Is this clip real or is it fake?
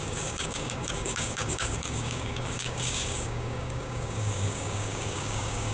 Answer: fake